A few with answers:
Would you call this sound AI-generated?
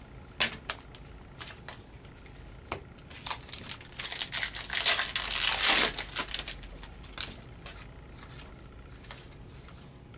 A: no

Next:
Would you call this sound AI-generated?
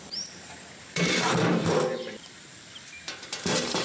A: yes